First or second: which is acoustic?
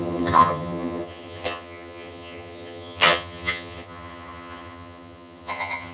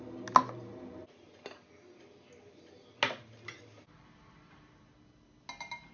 second